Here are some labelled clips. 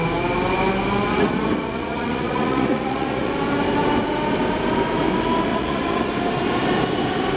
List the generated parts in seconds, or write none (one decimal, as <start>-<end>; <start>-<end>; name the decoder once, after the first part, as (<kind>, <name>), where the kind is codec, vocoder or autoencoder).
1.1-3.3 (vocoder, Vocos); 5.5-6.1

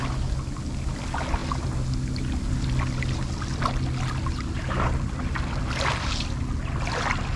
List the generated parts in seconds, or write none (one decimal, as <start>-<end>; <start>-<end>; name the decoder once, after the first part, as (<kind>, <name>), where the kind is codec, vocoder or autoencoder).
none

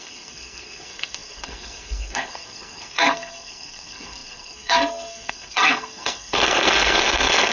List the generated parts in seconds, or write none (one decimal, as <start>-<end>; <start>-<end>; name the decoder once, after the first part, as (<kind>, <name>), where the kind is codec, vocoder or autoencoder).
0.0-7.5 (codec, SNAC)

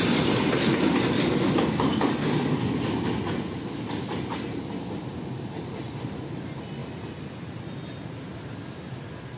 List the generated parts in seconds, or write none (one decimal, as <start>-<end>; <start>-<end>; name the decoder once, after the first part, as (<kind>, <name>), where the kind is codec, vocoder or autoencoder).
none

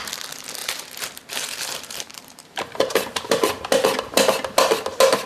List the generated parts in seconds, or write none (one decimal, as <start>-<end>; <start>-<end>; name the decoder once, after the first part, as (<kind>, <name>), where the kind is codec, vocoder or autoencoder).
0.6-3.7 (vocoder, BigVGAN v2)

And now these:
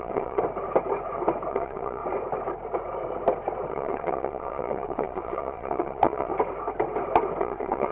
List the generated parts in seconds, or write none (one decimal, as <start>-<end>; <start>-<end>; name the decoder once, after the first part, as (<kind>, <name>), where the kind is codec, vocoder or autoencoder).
0.0-0.4 (vocoder, WaveNeXt); 1.5-2.0; 3.7-6.3; 7.4-7.9